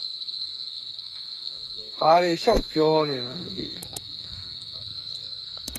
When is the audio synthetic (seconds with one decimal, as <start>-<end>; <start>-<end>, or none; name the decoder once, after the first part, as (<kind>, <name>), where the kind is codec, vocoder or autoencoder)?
0.0-5.8 (codec, SNAC)